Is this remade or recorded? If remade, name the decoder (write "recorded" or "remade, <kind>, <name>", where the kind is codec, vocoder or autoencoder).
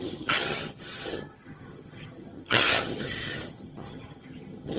remade, vocoder, HiFi-GAN